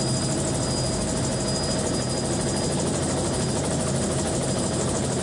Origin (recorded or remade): recorded